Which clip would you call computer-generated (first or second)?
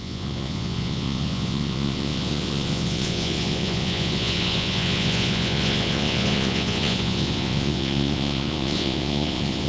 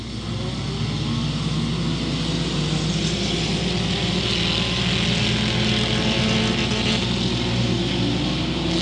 first